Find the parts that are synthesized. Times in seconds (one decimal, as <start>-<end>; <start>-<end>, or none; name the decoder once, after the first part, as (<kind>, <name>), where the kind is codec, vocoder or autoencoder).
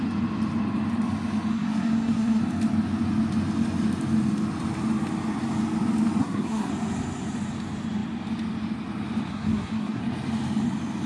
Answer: 1.5-2.4 (codec, SNAC); 6.2-6.7; 9.3-10.0